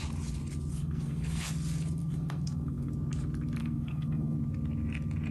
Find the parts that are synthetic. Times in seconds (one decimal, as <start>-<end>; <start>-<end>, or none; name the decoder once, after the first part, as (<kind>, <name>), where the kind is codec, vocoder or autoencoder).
0.7-1.5 (codec, SNAC); 2.0-2.9; 3.6-4.4